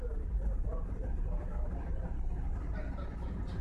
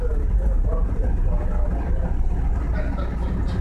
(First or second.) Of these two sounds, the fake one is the first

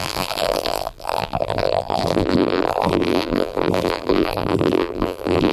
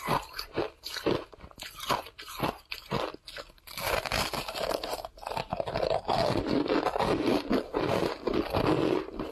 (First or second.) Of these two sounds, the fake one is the first